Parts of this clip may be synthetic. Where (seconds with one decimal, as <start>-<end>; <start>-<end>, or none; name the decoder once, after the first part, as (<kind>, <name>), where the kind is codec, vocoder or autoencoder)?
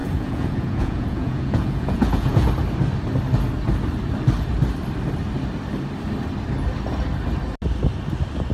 0.0-2.5 (vocoder, Vocos)